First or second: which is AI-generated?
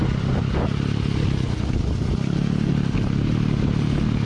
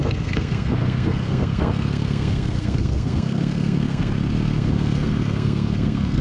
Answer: second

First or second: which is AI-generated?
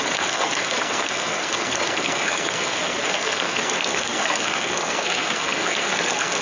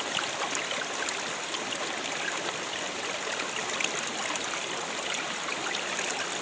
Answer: first